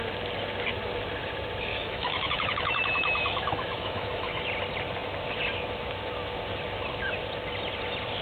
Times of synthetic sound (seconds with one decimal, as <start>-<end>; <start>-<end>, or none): 1.7-4.5